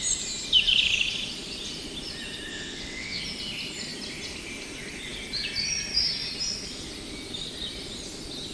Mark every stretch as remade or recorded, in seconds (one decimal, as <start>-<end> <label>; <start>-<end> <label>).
0.0-2.5 recorded; 2.5-3.2 remade; 3.2-8.5 recorded